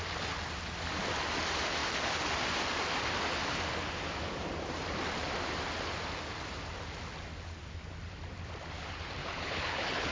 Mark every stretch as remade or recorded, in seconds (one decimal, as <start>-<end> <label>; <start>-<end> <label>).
0.0-9.2 recorded; 9.2-10.1 remade